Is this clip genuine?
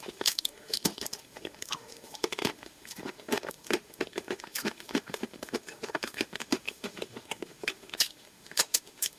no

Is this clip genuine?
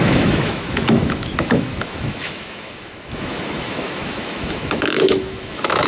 no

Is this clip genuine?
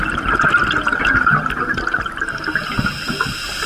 yes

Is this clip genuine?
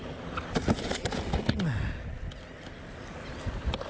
yes